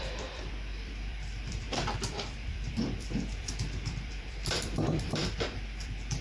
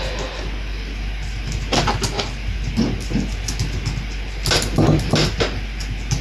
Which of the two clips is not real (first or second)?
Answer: first